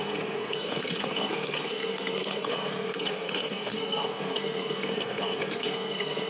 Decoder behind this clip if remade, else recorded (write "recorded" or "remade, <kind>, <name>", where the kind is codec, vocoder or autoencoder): remade, codec, SNAC